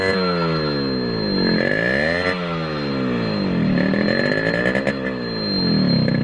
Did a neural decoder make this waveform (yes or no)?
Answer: no